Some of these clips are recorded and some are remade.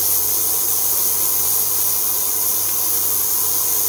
recorded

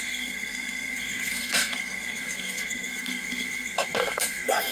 remade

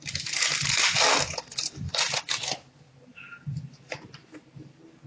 recorded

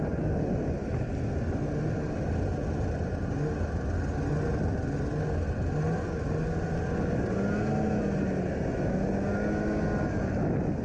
recorded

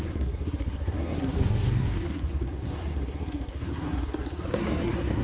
remade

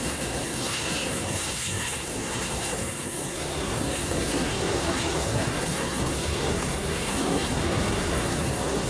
remade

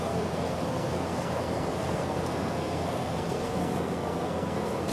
remade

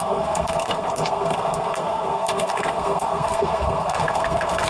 remade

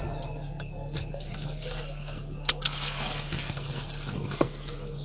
remade